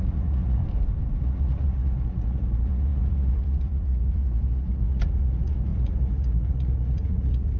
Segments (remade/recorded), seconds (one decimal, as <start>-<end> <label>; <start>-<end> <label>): 0.0-0.6 remade; 0.6-1.2 recorded; 1.2-7.6 remade

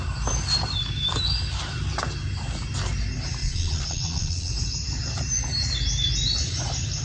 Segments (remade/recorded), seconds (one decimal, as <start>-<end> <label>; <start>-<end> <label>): 0.0-3.4 recorded; 3.4-4.5 remade; 4.5-7.0 recorded

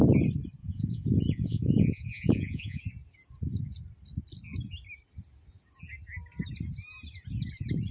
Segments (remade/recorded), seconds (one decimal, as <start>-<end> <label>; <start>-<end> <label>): 0.0-0.6 recorded; 0.6-2.8 remade; 2.8-7.9 recorded

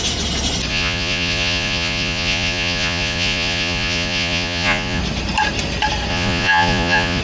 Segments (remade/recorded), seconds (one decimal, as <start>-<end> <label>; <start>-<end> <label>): 0.0-0.7 recorded; 0.7-5.0 remade; 5.0-6.1 recorded; 6.1-7.2 remade